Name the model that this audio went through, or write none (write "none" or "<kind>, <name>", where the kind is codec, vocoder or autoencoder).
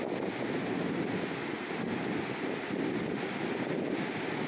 none